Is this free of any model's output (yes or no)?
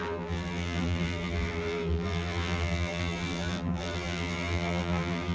no